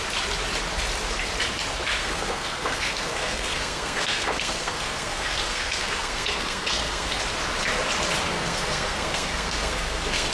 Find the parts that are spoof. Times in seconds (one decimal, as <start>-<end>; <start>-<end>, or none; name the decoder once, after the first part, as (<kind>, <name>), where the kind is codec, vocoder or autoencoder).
2.0-7.2 (codec, SNAC); 8.3-10.3